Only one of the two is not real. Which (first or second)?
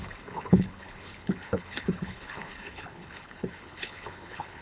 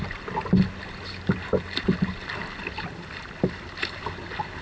first